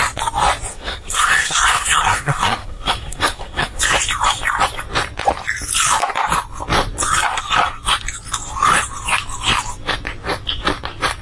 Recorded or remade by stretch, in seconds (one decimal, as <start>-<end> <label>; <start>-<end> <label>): 0.0-0.7 recorded; 0.7-3.8 remade; 3.8-11.2 recorded